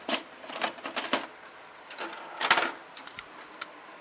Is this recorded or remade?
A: remade